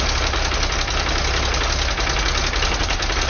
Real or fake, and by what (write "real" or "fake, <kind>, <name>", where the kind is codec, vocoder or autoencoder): real